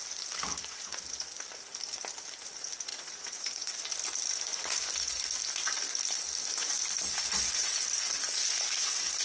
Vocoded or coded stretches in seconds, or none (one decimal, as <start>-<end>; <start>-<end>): 0.5-1.0; 2.9-3.8